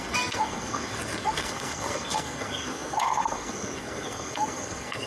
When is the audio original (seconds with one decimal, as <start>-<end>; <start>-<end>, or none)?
none